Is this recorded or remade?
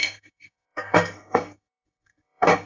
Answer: remade